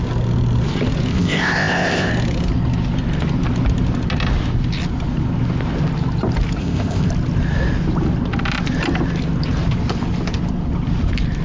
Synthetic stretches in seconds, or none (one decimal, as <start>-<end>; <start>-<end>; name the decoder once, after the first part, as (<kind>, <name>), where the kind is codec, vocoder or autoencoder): 1.1-2.1 (codec, ZipCodec); 6.6-7.1